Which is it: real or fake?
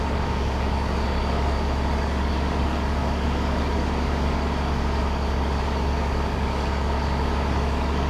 fake